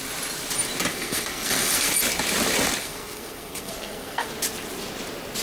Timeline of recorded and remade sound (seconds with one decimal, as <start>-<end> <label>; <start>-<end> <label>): 0.0-0.9 recorded; 0.9-1.9 remade; 1.9-2.8 recorded; 2.8-4.3 remade; 4.3-5.4 recorded